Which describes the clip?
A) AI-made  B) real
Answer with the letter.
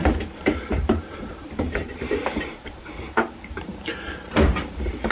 A